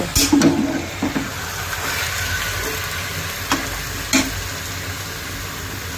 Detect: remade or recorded recorded